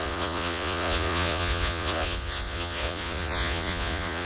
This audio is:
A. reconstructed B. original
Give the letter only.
A